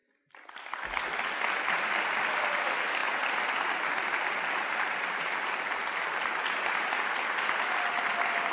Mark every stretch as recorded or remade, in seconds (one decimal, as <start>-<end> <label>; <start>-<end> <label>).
0.0-8.5 recorded

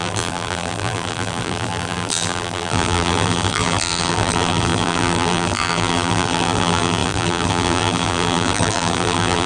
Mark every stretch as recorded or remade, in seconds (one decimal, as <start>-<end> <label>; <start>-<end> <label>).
0.0-9.5 remade

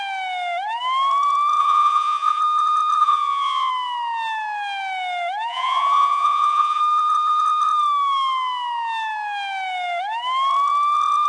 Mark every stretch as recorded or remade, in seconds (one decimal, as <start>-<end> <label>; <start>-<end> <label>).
0.0-1.6 recorded; 1.6-2.4 remade; 2.4-3.0 recorded; 3.0-3.7 remade; 3.7-5.5 recorded; 5.5-6.8 remade; 6.8-11.3 recorded

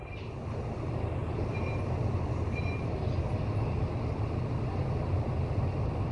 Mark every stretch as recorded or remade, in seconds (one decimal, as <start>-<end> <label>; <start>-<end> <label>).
0.0-6.1 recorded

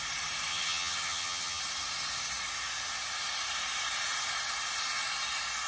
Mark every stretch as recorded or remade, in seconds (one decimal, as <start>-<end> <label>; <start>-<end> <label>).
0.0-0.5 recorded; 0.5-1.6 remade; 1.6-5.7 recorded

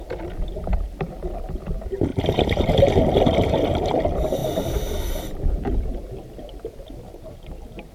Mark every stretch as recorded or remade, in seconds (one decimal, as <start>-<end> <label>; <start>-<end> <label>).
0.0-2.1 recorded; 2.1-3.9 remade; 3.9-4.4 recorded; 4.4-5.0 remade; 5.0-7.1 recorded; 7.1-7.9 remade

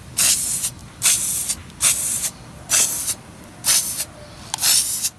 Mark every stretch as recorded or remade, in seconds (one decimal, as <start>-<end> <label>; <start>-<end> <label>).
0.0-0.8 recorded; 0.8-3.9 remade; 3.9-5.2 recorded

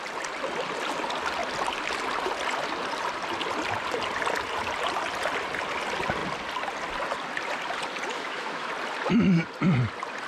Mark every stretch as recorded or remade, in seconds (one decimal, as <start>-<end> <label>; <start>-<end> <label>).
0.0-8.1 recorded; 8.1-8.7 remade; 8.7-10.3 recorded